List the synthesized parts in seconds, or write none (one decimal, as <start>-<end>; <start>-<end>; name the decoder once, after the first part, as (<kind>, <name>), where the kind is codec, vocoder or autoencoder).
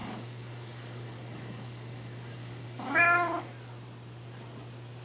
0.0-3.0 (codec, DAC)